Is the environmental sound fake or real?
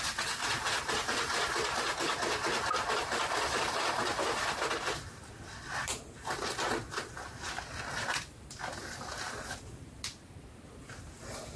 real